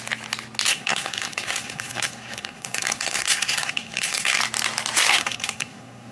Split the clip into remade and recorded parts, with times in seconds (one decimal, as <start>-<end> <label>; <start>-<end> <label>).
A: 0.0-0.7 recorded; 0.7-4.4 remade; 4.4-5.1 recorded; 5.1-6.1 remade